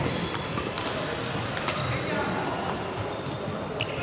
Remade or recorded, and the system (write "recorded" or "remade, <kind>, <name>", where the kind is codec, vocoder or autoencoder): recorded